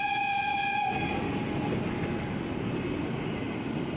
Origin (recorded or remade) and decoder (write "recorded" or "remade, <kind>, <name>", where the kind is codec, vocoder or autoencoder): recorded